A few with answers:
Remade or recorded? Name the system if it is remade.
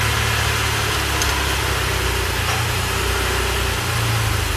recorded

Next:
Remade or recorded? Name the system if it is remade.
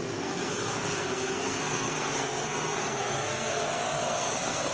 remade, codec, SNAC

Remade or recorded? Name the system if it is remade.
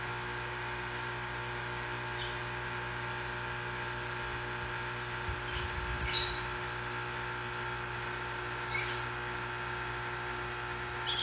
recorded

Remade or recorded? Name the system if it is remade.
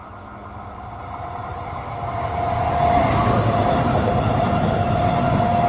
recorded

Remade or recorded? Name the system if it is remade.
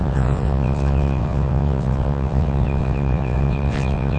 remade, vocoder, WaveNeXt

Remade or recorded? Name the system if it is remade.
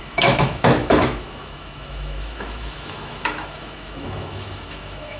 remade, autoencoder, DAC-VAE